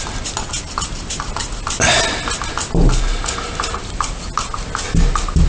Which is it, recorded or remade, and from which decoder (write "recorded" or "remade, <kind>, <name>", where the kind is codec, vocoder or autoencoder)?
recorded